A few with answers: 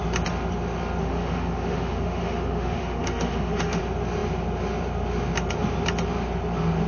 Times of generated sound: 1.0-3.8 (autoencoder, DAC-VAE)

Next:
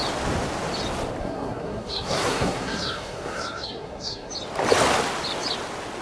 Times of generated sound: 1.2-4.3 (codec, SNAC)

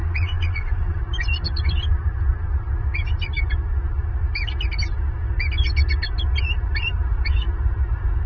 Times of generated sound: 0.0-1.0 (vocoder, Vocos)

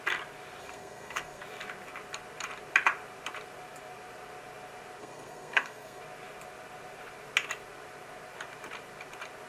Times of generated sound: 0.6-1.4 (codec, SNAC); 5.0-6.0

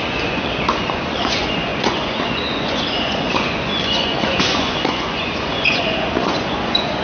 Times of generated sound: 0.0-7.0 (vocoder, Vocos)